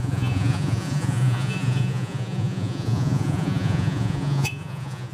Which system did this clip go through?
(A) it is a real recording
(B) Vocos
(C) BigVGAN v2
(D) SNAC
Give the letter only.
B